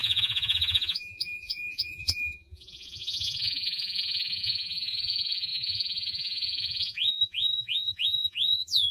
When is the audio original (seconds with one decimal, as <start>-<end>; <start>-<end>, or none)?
none